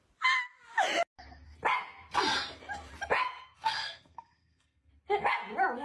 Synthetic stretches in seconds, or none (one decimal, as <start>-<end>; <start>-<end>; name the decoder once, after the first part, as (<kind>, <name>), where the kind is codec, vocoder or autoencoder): 3.2-4.9 (codec, SNAC)